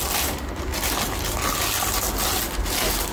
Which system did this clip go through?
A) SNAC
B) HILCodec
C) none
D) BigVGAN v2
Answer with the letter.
C